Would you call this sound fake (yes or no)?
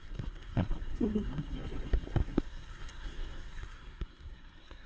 yes